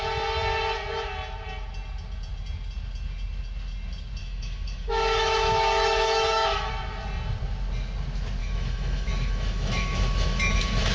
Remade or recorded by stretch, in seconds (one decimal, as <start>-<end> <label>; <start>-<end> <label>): 0.0-4.2 recorded; 4.2-6.7 remade; 6.7-8.4 recorded; 8.4-10.9 remade